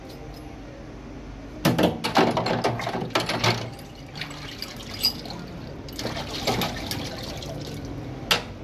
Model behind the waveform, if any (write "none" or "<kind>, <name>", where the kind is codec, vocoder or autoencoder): none